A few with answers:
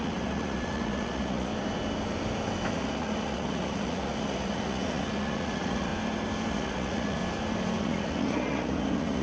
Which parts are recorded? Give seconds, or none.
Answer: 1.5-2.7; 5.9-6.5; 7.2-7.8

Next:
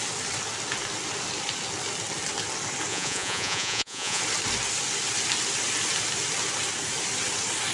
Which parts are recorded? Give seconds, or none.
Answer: 0.0-2.9; 4.2-7.7

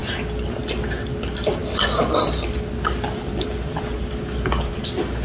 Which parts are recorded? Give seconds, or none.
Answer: 0.0-5.2

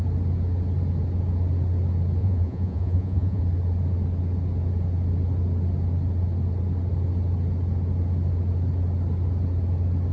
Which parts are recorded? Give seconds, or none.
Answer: 0.0-2.2; 3.4-10.1

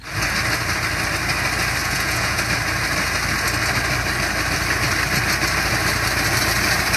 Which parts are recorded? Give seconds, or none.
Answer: 0.0-1.8; 2.4-7.0

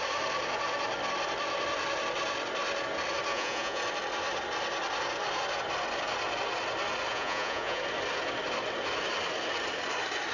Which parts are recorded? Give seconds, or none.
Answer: 0.0-3.3; 3.8-7.1; 7.8-10.3